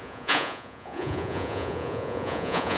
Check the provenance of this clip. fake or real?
fake